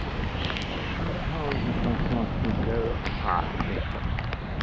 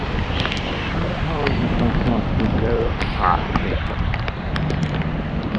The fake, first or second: second